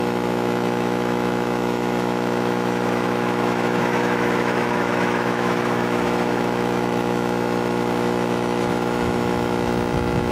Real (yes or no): no